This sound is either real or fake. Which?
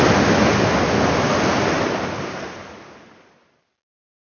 real